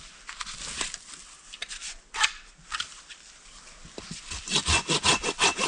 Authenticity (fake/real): real